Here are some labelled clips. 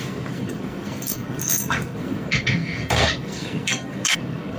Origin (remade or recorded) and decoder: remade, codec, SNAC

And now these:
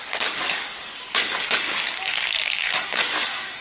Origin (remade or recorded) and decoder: remade, codec, DAC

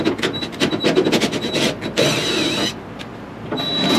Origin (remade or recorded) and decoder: remade, vocoder, BigVGAN v2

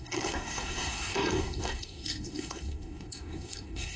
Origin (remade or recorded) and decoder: remade, codec, SNAC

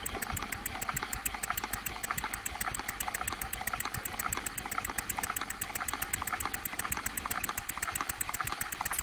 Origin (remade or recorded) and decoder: recorded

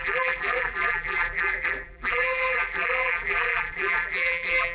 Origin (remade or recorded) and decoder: remade, vocoder, BigVGAN v2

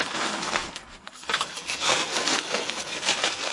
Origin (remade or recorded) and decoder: remade, codec, SNAC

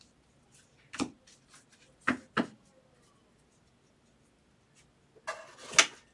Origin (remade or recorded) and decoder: recorded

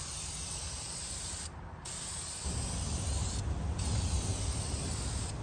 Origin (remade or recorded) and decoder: recorded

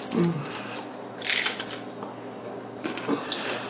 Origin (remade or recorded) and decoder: recorded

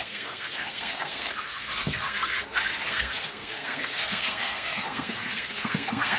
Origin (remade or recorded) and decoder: remade, codec, SNAC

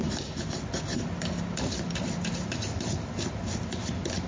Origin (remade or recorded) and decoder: recorded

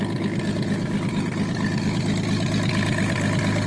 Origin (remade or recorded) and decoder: recorded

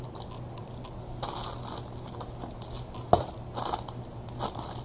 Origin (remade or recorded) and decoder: recorded